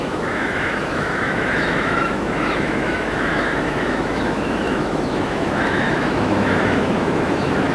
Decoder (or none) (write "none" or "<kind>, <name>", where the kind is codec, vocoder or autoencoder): autoencoder, DAC-VAE